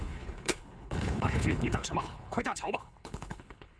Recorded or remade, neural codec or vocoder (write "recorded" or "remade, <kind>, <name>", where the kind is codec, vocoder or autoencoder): remade, codec, HILCodec